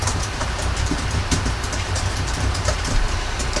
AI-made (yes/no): yes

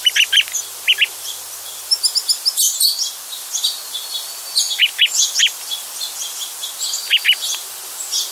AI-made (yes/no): no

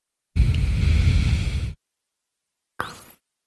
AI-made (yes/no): no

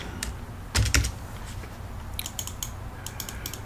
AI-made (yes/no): no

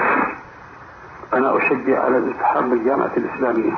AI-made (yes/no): yes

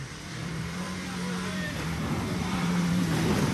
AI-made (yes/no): yes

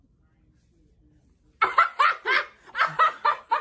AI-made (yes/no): no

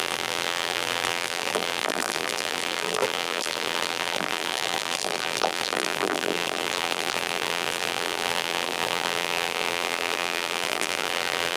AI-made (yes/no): yes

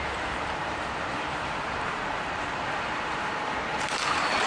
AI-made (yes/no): yes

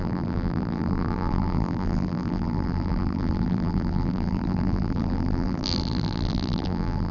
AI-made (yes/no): yes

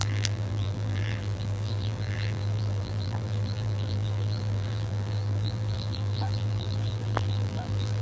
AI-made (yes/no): yes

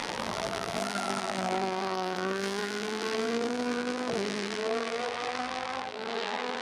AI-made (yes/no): yes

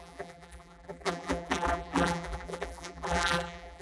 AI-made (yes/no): yes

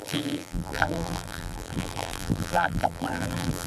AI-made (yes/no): yes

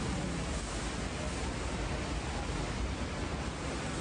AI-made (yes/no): no